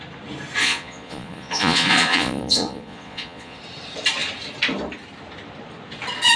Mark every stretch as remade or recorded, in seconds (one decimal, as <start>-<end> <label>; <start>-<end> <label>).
0.0-0.6 recorded; 0.6-3.6 remade; 3.6-6.4 recorded